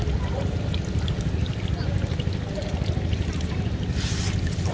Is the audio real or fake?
real